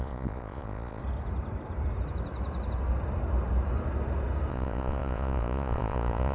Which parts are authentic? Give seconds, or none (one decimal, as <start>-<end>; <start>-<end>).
1.0-4.5